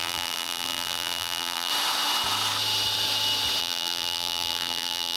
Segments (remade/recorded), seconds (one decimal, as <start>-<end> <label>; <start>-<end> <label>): 0.0-1.7 remade; 1.7-3.6 recorded; 3.6-5.2 remade